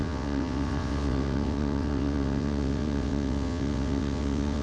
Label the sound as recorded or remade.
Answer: remade